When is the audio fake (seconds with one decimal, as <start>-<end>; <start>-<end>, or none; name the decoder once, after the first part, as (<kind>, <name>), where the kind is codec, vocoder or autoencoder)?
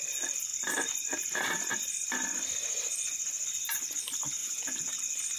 4.4-5.0 (vocoder, Vocos)